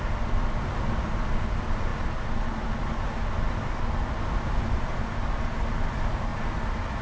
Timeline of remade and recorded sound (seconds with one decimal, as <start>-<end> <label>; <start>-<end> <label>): 0.0-7.0 recorded